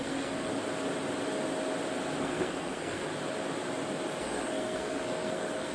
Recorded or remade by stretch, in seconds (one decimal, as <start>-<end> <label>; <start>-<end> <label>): 0.0-0.5 remade; 0.5-2.2 recorded; 2.2-3.1 remade; 3.1-4.2 recorded; 4.2-5.7 remade

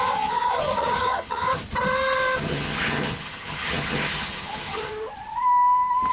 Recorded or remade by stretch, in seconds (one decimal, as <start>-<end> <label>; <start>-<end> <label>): 0.0-1.6 remade; 1.6-2.4 recorded; 2.4-4.9 remade; 4.9-6.1 recorded

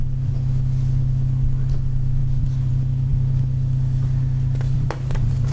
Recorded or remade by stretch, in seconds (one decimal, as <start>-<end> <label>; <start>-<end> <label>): 0.0-2.2 recorded; 2.2-2.7 remade; 2.7-3.1 recorded; 3.1-5.5 remade

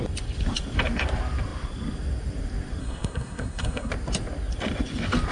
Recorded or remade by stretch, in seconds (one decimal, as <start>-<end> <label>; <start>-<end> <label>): 0.0-2.8 recorded; 2.8-3.9 remade; 3.9-5.3 recorded

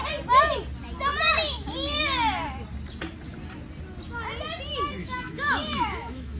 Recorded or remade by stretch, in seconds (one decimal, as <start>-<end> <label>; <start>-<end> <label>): 0.0-5.0 recorded; 5.0-6.4 remade

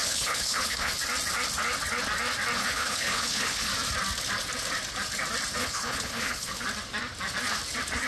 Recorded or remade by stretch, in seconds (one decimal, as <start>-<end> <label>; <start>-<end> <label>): 0.0-0.9 remade; 0.9-2.6 recorded; 2.6-3.7 remade; 3.7-5.6 recorded; 5.6-6.6 remade; 6.6-8.1 recorded

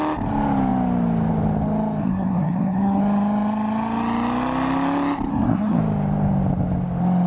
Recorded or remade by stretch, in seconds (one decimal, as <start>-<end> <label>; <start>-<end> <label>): 0.0-2.0 recorded; 2.0-3.0 remade; 3.0-5.3 recorded; 5.3-5.8 remade; 5.8-7.3 recorded

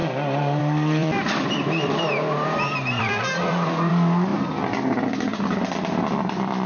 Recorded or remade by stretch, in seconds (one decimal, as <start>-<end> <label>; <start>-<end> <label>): 0.0-1.0 recorded; 1.0-3.9 remade; 3.9-6.7 recorded